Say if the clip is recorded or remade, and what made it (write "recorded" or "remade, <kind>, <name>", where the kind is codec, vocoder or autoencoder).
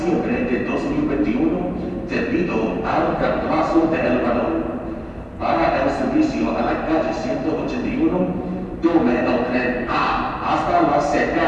remade, vocoder, BigVGAN v2